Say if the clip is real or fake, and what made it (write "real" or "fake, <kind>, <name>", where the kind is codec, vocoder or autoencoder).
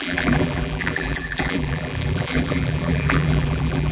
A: fake, vocoder, BigVGAN v2